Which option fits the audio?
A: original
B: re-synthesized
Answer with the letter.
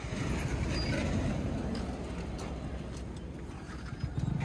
A